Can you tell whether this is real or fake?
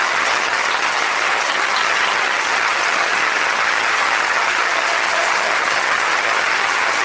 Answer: fake